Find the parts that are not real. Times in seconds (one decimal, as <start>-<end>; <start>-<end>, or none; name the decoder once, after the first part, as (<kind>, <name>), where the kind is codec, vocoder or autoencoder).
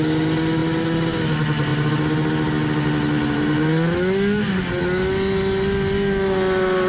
none